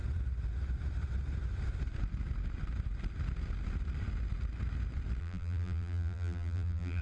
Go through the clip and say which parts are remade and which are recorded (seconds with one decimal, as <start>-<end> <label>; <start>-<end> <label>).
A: 0.0-5.2 recorded; 5.2-7.0 remade